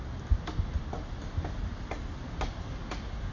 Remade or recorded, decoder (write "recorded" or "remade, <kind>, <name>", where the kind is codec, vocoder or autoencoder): recorded